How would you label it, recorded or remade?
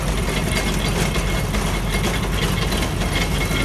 recorded